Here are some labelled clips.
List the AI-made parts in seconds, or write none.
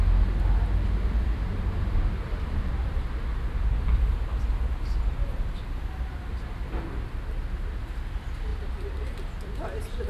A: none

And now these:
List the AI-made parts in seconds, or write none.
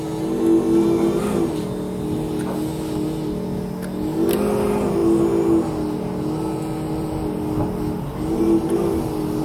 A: none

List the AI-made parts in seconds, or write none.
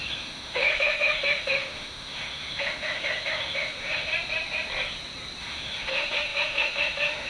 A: 0.0-4.1; 5.4-7.3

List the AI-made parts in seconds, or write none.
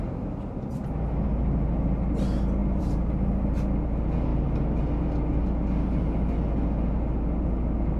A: 2.6-3.1; 4.3-4.8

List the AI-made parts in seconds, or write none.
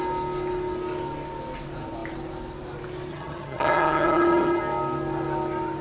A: 3.1-4.6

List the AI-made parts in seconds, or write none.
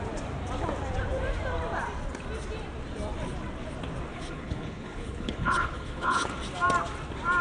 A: 4.1-6.3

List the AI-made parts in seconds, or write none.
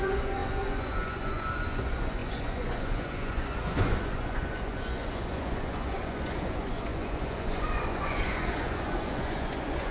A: 0.0-9.9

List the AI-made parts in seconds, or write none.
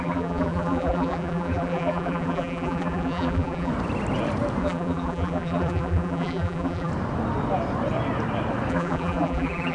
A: 0.0-3.7; 4.6-6.9; 8.7-9.7